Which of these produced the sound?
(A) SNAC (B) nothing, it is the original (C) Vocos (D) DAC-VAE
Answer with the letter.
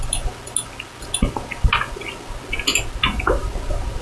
B